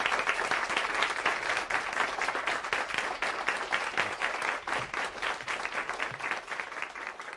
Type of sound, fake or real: real